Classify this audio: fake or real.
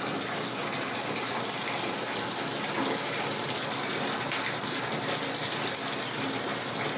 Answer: real